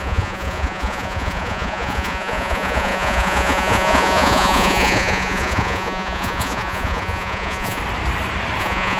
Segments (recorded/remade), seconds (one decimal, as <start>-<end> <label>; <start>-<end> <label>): 0.0-7.8 remade; 7.8-8.6 recorded; 8.6-9.0 remade